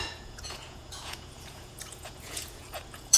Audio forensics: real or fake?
fake